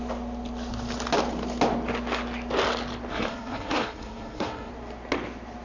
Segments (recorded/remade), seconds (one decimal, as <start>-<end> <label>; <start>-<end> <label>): 0.0-3.1 recorded; 3.1-4.7 remade; 4.7-5.6 recorded